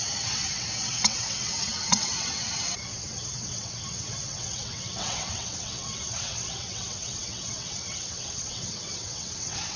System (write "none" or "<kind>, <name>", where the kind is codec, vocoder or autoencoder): vocoder, WaveNeXt